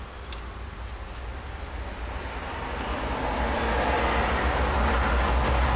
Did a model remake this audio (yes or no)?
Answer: no